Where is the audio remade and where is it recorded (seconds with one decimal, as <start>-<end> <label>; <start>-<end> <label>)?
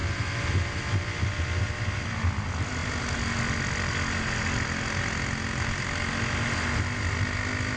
0.0-7.8 recorded